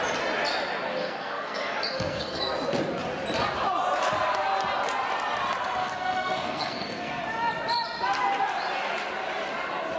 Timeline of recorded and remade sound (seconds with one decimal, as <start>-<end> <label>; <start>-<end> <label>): 0.0-1.0 recorded; 1.0-2.4 remade; 2.4-5.8 recorded; 5.8-7.2 remade; 7.2-10.0 recorded